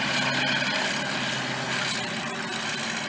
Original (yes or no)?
yes